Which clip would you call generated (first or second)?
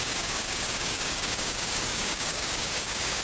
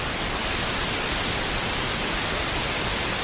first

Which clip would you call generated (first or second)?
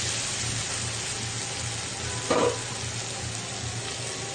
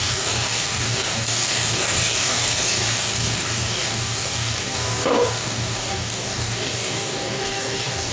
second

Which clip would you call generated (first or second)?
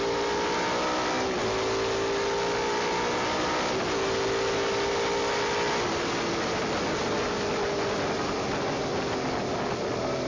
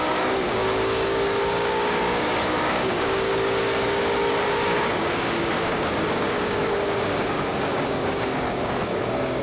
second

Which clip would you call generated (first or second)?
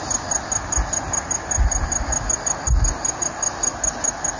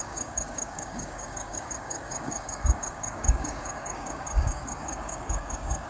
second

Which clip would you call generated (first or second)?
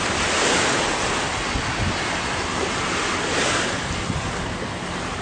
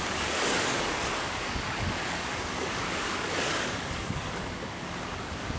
second